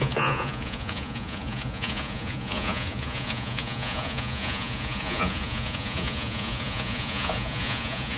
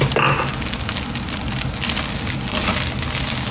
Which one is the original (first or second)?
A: second